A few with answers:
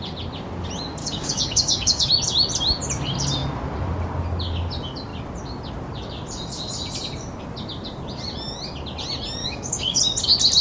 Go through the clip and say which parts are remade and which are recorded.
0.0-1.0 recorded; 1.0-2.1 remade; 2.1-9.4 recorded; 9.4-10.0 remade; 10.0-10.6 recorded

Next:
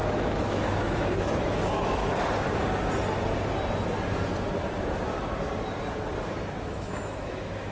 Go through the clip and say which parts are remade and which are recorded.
0.0-2.0 remade; 2.0-6.6 recorded; 6.6-7.7 remade